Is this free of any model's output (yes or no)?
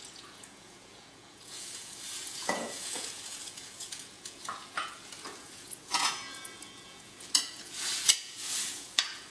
no